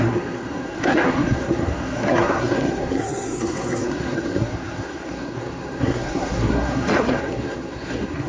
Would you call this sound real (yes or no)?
no